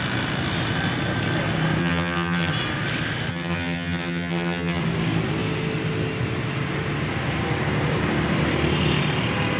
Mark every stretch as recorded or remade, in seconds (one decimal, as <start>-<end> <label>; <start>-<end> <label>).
0.0-1.8 recorded; 1.8-2.5 remade; 2.5-3.3 recorded; 3.3-4.8 remade; 4.8-9.6 recorded

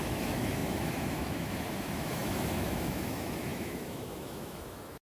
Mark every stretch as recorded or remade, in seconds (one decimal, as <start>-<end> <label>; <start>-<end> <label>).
0.0-5.2 remade